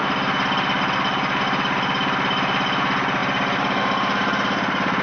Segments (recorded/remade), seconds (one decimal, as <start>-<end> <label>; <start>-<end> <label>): 0.0-5.0 recorded